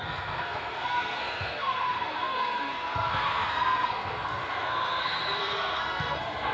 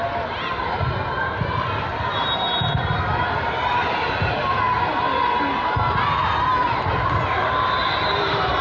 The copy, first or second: first